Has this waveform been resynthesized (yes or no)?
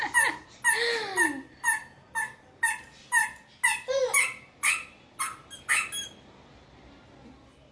no